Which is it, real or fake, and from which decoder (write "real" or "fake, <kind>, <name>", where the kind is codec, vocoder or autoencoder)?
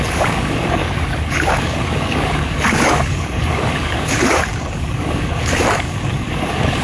fake, codec, DAC